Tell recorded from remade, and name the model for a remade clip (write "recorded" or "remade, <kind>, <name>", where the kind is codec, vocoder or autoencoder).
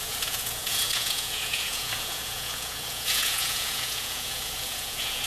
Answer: remade, vocoder, Vocos